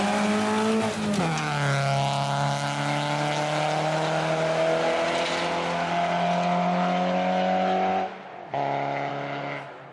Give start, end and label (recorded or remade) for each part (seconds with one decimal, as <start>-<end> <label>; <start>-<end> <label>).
0.0-9.9 recorded